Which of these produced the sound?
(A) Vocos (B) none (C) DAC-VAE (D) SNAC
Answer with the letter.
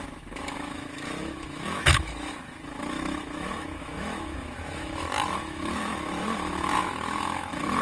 C